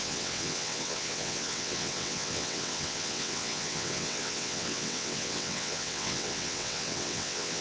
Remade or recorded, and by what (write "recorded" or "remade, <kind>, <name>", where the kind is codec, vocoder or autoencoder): remade, vocoder, WaveNeXt